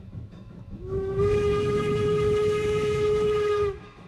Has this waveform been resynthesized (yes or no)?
yes